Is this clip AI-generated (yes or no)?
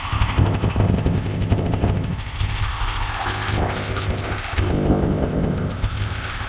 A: yes